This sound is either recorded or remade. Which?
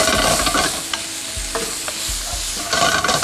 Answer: recorded